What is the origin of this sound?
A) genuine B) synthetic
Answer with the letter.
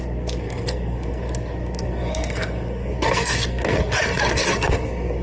B